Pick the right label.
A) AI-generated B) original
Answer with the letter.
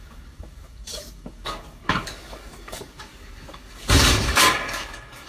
A